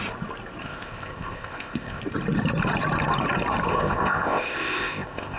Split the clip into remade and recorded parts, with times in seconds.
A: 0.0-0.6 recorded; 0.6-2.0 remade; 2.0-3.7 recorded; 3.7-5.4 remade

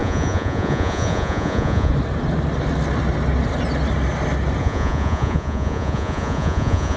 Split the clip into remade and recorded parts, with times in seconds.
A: 0.0-1.9 remade; 1.9-4.6 recorded; 4.6-7.0 remade